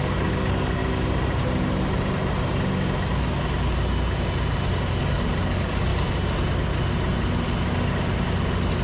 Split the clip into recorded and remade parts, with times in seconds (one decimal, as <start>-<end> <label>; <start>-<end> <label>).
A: 0.0-0.8 remade; 0.8-5.0 recorded; 5.0-5.9 remade; 5.9-8.8 recorded